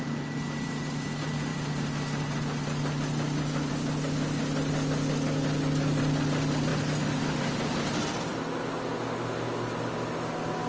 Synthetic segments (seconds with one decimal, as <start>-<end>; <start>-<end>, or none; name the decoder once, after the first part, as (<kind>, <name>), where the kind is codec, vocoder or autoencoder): none